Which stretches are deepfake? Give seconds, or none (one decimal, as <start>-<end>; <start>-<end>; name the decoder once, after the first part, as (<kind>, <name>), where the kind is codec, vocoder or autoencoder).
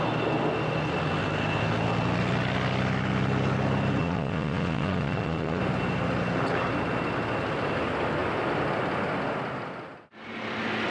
4.0-5.6 (vocoder, Vocos)